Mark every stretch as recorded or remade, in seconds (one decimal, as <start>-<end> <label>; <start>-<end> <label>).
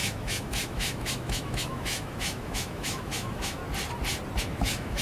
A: 0.0-3.6 remade; 3.6-4.4 recorded; 4.4-5.0 remade